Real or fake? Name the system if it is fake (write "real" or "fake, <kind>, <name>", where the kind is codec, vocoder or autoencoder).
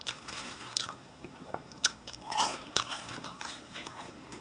fake, codec, SNAC